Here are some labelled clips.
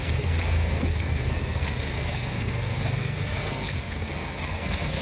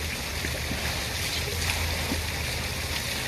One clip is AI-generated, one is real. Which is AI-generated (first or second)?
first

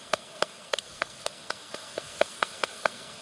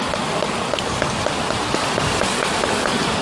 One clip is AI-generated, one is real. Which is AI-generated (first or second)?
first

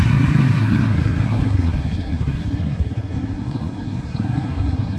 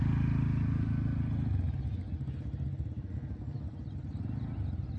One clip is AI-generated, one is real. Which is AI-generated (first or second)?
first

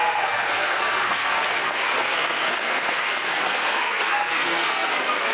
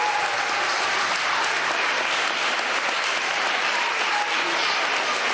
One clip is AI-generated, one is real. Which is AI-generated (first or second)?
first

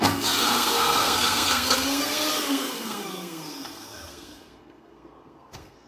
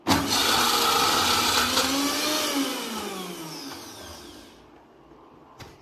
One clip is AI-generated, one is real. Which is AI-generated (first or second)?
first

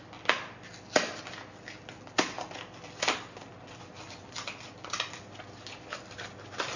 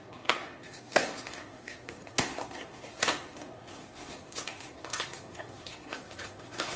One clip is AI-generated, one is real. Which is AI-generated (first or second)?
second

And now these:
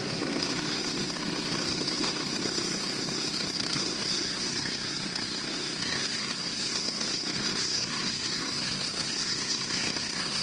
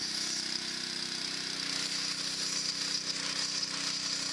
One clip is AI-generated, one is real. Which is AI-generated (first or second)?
first